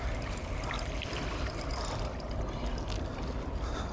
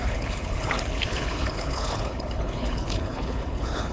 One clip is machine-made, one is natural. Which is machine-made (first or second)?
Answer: second